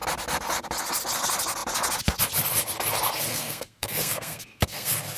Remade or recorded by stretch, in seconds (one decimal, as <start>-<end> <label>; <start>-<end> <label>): 0.0-3.3 recorded; 3.3-5.2 remade